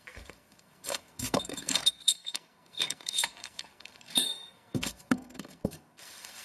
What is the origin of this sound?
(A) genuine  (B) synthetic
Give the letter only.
B